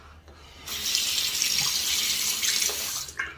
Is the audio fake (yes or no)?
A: no